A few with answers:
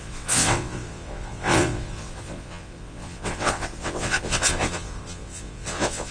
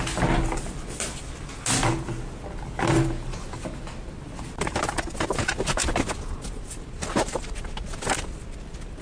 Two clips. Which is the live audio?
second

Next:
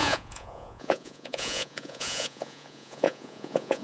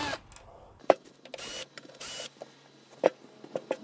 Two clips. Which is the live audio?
second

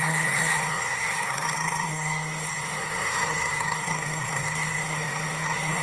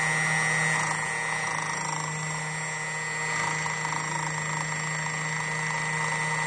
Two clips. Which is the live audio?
second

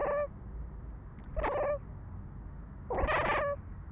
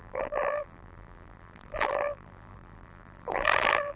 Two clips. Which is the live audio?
first